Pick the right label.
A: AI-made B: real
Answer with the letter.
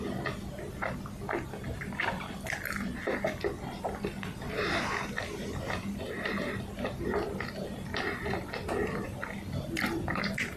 B